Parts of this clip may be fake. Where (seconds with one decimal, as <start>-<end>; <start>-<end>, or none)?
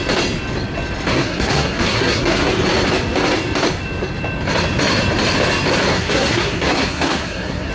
1.1-2.5; 5.9-7.7